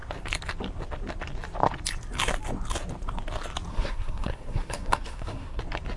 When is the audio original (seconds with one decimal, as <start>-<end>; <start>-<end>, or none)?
0.0-3.7; 5.6-6.0

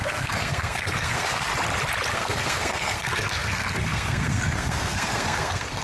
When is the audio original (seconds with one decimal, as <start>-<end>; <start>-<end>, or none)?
1.5-2.1

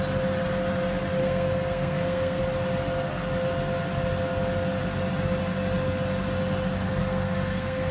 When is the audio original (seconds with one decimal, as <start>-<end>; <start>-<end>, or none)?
0.0-1.2; 2.4-7.0

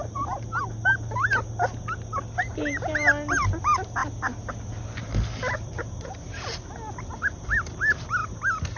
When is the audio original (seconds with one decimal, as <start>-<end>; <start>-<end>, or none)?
0.0-8.8

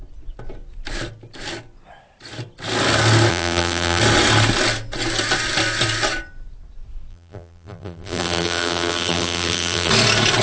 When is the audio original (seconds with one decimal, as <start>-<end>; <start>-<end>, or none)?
0.0-3.3; 4.0-7.1; 9.9-10.4

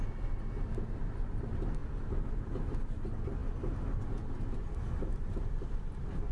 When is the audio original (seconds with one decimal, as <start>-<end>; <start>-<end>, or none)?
0.0-6.3

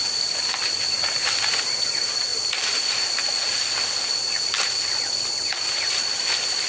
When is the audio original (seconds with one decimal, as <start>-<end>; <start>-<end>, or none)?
0.0-6.7

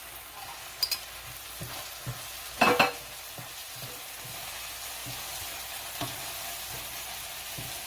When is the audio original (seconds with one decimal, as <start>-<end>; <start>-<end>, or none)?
0.0-7.9